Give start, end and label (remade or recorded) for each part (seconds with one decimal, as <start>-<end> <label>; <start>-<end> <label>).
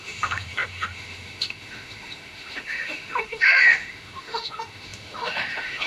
0.0-5.9 remade